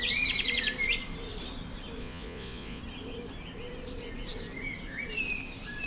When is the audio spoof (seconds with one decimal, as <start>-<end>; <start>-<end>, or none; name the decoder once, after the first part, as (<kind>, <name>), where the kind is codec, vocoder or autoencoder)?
2.0-2.8 (vocoder, Vocos)